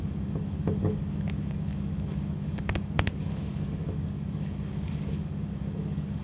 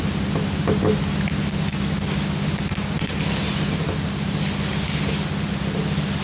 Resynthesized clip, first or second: first